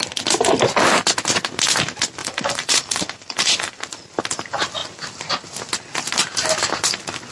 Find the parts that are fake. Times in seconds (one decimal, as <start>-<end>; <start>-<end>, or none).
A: 2.2-3.8